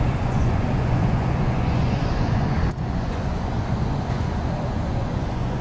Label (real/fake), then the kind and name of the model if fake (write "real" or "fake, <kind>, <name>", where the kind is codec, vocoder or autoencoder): fake, vocoder, Vocos